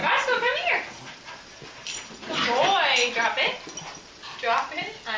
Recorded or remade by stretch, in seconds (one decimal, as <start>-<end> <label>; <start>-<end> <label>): 0.0-5.2 recorded